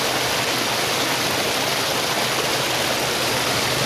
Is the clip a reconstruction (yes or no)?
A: no